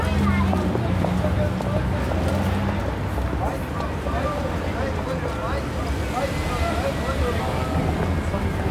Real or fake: real